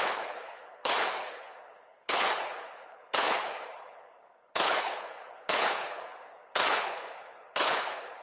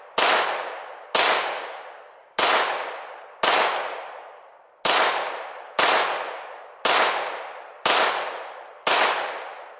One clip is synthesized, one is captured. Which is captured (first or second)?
second